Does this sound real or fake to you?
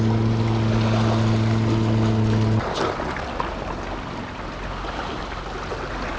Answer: real